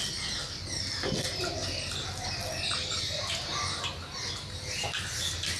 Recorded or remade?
recorded